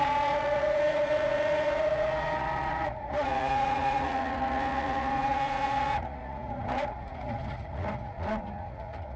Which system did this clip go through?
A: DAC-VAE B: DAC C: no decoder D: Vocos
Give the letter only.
D